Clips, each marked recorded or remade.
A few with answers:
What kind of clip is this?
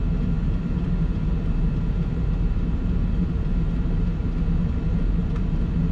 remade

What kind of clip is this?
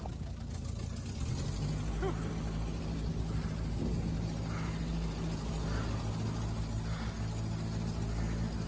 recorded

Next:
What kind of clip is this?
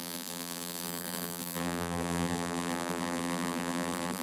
remade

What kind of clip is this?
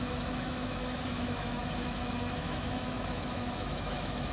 remade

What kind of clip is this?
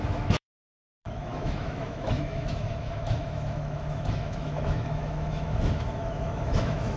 remade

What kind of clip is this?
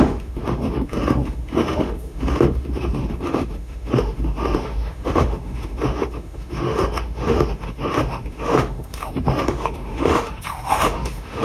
remade